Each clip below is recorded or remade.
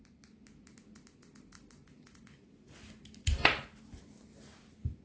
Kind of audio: recorded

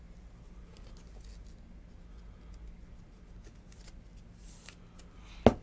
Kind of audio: recorded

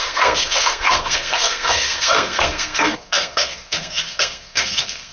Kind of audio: remade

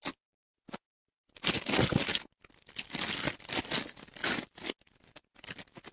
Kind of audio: recorded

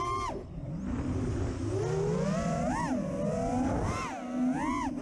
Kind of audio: recorded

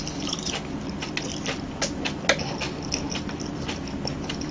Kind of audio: recorded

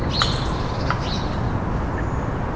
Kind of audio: recorded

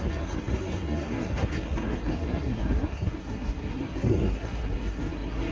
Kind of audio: remade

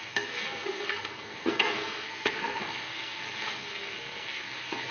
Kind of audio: remade